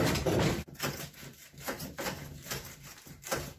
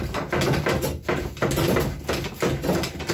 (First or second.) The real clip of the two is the second